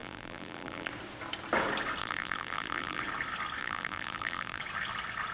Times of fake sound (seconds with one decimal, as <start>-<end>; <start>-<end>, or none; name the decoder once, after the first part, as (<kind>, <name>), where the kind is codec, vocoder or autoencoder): 0.0-0.9 (vocoder, BigVGAN v2); 2.0-3.0; 3.6-4.6